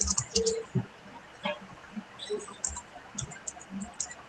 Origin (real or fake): real